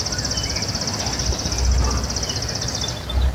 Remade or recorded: recorded